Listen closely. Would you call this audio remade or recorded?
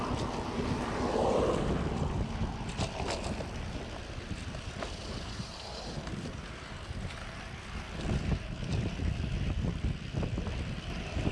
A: recorded